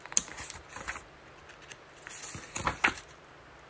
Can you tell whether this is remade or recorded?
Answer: recorded